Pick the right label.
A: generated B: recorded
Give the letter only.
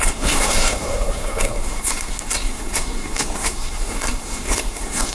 A